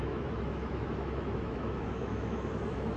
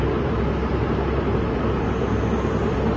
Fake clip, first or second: first